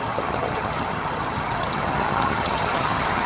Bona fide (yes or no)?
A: no